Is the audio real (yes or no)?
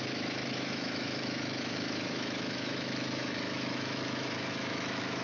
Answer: no